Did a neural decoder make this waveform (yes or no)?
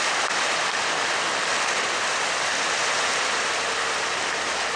no